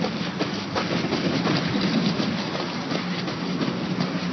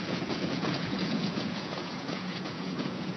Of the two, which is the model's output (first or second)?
second